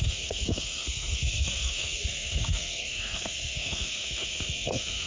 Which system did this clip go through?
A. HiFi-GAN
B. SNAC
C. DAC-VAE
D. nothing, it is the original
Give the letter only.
B